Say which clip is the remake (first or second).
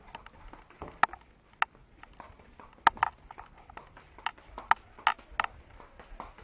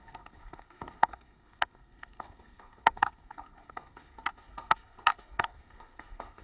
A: second